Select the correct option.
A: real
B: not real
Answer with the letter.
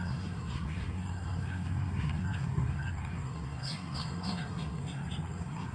B